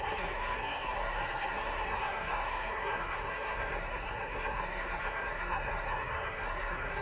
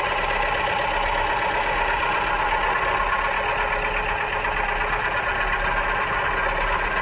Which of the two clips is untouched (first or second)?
second